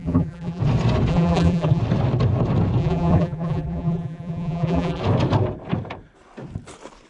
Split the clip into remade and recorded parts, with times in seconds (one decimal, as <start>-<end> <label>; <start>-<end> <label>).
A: 0.0-0.6 remade; 0.6-1.1 recorded; 1.1-1.8 remade; 1.8-2.8 recorded; 2.8-5.0 remade; 5.0-7.1 recorded